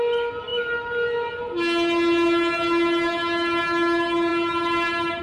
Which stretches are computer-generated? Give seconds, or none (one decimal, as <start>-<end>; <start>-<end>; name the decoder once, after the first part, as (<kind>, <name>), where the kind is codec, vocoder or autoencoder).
none